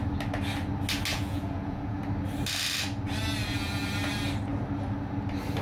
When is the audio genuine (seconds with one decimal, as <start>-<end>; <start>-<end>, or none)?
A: 0.0-1.1; 2.0-3.4; 3.9-5.6